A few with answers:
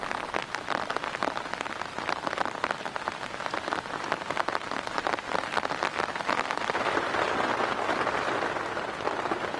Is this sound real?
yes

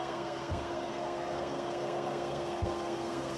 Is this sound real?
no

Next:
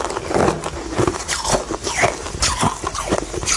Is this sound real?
yes